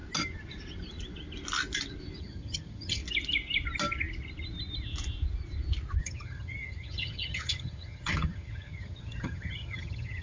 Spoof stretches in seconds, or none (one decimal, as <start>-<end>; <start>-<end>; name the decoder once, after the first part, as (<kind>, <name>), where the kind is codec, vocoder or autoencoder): 2.2-3.0 (vocoder, HiFi-GAN); 6.0-10.2